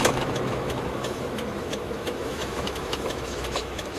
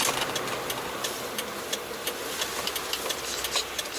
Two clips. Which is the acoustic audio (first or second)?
second